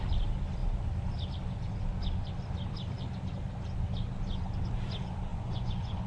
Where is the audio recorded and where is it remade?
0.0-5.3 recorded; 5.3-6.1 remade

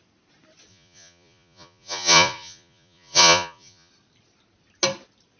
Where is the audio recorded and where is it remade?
0.0-0.7 recorded; 0.7-3.9 remade; 3.9-5.4 recorded

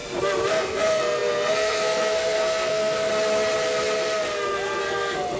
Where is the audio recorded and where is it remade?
0.0-0.5 recorded; 0.5-3.1 remade; 3.1-4.8 recorded; 4.8-5.4 remade

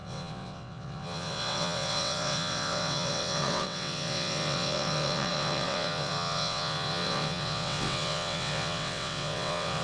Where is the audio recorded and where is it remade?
0.0-9.8 remade

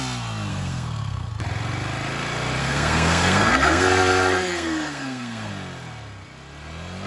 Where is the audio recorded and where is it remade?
0.0-0.5 recorded; 0.5-1.3 remade; 1.3-2.6 recorded; 2.6-5.5 remade; 5.5-7.1 recorded

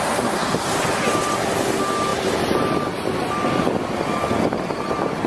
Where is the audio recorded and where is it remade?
0.0-5.3 recorded

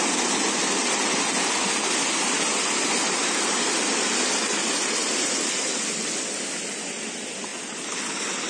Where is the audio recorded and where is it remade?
0.0-4.6 recorded; 4.6-5.8 remade; 5.8-8.5 recorded